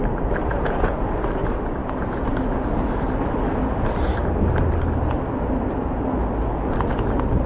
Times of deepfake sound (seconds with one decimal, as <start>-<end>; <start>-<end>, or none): 0.5-1.0